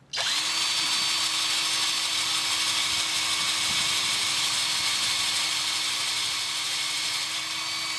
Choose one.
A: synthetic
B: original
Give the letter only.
B